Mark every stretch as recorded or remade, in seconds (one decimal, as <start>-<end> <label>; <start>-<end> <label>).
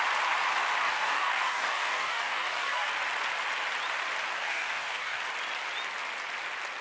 0.0-0.8 recorded; 0.8-2.9 remade; 2.9-4.3 recorded; 4.3-5.2 remade; 5.2-6.8 recorded